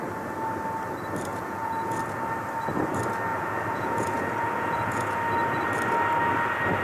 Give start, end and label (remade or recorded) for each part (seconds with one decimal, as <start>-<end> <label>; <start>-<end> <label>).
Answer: 0.0-1.3 recorded; 1.3-2.0 remade; 2.0-3.3 recorded; 3.3-5.2 remade; 5.2-6.8 recorded